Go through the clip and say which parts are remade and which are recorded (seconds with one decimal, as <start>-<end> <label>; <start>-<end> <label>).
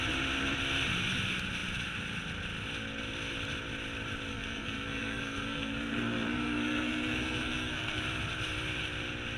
0.0-4.3 recorded; 4.3-8.0 remade; 8.0-9.4 recorded